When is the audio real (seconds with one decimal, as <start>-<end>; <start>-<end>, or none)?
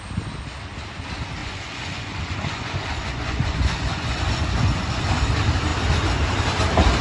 0.0-1.4; 5.0-7.0